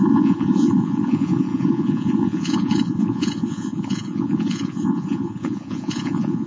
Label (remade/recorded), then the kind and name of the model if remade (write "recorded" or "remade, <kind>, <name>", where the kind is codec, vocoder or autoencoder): remade, vocoder, Vocos